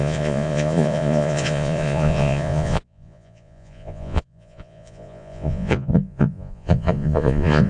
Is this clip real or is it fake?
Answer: fake